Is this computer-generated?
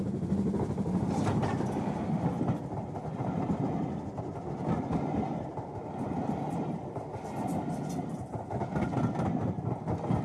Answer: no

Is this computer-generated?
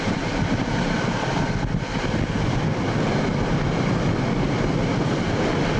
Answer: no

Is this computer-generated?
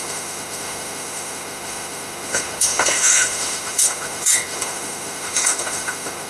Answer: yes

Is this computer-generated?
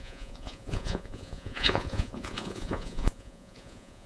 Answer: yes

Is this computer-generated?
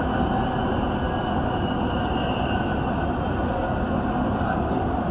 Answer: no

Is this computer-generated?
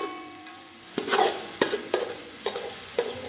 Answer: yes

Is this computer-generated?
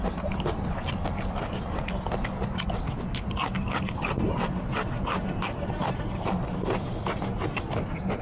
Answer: no